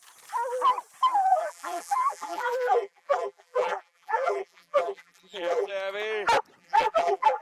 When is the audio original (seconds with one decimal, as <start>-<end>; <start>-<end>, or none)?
0.0-1.3; 5.7-6.6